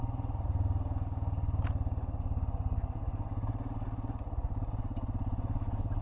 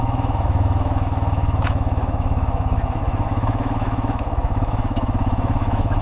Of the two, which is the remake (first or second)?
second